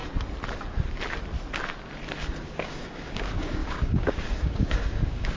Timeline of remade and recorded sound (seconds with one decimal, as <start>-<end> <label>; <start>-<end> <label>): 0.0-2.4 recorded; 2.4-5.4 remade

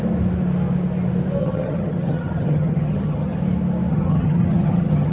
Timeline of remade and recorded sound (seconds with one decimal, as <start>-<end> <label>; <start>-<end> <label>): 0.0-1.4 recorded; 1.4-3.4 remade; 3.4-3.9 recorded; 3.9-5.1 remade

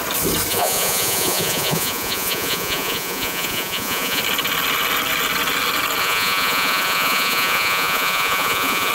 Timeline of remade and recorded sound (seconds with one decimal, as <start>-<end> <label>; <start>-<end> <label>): 0.0-0.5 recorded; 0.5-4.2 remade; 4.2-6.0 recorded; 6.0-8.9 remade

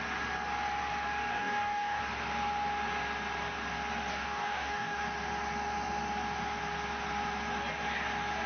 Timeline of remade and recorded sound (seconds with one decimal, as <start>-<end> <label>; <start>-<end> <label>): 0.0-1.3 recorded; 1.3-2.0 remade; 2.0-4.1 recorded; 4.1-5.0 remade; 5.0-8.5 recorded